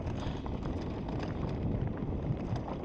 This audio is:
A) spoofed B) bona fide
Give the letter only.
B